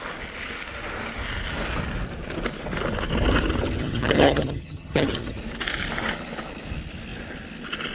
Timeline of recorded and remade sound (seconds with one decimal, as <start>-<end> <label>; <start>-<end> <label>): 0.0-3.8 recorded; 3.8-5.4 remade; 5.4-7.9 recorded